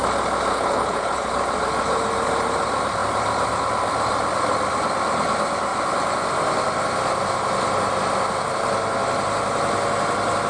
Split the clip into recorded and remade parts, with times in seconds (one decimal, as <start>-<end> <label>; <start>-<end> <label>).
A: 0.0-0.5 recorded; 0.5-1.3 remade; 1.3-10.5 recorded